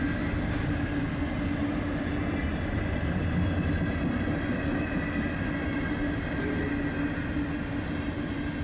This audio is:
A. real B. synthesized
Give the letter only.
A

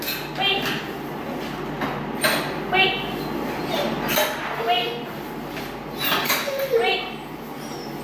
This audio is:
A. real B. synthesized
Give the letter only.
A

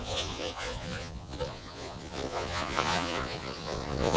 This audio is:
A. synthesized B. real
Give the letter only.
A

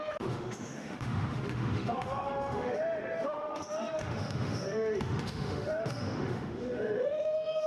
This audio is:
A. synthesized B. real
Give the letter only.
A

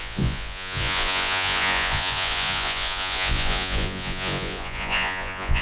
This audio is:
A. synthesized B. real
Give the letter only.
A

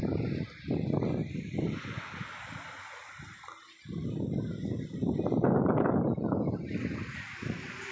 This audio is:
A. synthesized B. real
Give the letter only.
B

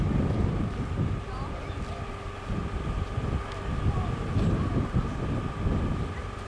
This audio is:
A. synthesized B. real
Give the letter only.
B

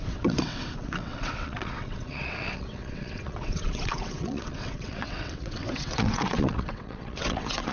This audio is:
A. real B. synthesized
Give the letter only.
B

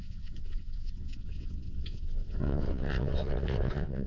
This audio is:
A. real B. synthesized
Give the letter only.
B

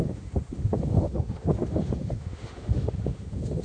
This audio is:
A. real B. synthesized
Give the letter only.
B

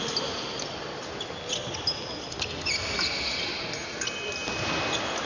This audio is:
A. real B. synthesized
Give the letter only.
A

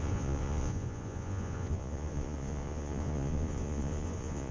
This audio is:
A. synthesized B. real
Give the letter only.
A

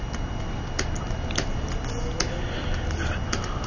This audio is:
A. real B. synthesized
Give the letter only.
A